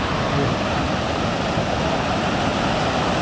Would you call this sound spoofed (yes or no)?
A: no